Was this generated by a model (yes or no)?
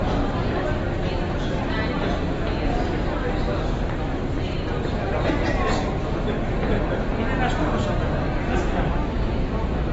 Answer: no